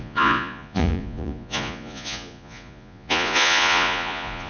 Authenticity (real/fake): fake